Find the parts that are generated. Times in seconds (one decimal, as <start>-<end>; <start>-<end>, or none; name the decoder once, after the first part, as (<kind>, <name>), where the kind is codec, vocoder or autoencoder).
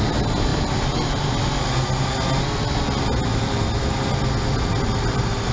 none